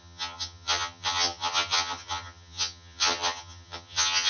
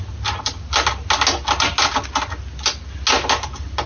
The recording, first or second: second